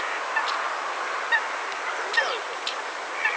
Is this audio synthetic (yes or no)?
no